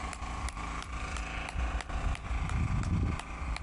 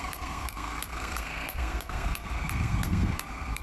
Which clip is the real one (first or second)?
first